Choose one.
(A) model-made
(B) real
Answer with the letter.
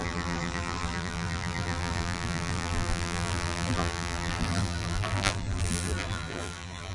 A